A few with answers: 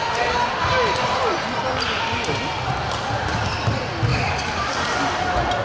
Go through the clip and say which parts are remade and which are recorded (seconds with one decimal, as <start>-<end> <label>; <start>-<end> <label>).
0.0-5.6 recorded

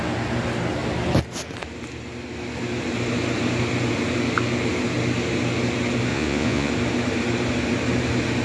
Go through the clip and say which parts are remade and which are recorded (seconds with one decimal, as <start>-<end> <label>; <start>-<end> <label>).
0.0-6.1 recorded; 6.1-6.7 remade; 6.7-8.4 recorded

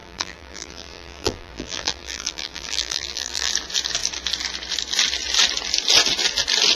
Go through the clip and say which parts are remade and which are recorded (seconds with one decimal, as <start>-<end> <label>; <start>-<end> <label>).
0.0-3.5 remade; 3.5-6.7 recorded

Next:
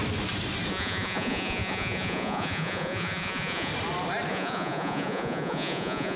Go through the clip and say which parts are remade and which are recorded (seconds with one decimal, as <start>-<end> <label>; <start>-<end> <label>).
0.0-0.7 recorded; 0.7-3.7 remade; 3.7-4.3 recorded; 4.3-6.2 remade

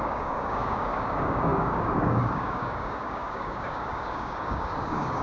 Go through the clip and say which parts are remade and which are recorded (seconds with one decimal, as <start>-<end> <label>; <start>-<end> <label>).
0.0-5.2 remade

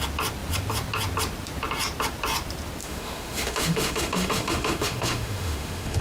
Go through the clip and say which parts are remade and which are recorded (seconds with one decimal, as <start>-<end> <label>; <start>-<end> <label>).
0.0-2.8 recorded; 2.8-6.0 remade

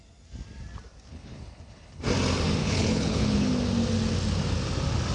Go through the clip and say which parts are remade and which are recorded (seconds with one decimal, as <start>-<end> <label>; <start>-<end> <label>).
0.0-1.1 recorded; 1.1-2.0 remade; 2.0-2.6 recorded; 2.6-3.5 remade; 3.5-5.1 recorded